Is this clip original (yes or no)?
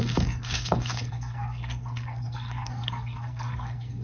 no